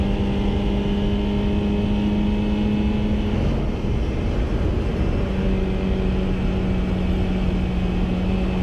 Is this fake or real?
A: real